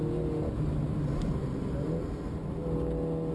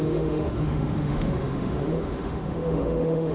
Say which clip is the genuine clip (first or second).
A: first